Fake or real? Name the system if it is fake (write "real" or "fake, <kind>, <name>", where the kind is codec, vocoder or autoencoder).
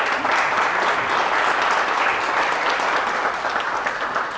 real